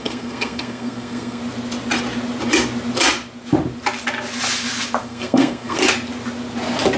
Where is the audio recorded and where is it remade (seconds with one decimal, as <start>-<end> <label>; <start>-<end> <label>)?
0.0-1.4 remade; 1.4-5.0 recorded; 5.0-5.8 remade; 5.8-7.0 recorded